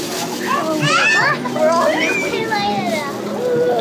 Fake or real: real